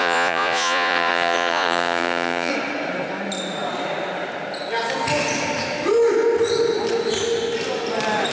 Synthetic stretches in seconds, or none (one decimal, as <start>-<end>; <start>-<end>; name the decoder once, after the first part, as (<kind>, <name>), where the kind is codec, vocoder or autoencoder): 0.0-2.5 (vocoder, Vocos)